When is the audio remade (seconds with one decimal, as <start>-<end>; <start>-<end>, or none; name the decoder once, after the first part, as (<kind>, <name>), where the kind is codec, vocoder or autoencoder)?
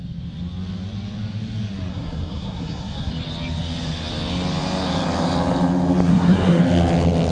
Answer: 1.9-3.1 (codec, SNAC); 6.1-6.6